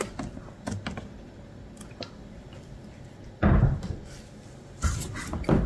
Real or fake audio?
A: real